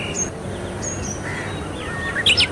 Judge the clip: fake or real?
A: real